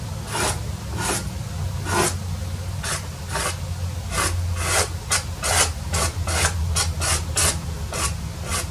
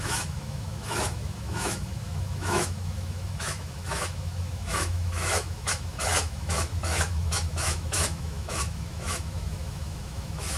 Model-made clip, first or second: second